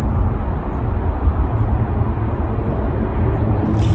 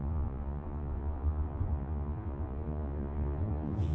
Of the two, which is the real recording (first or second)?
first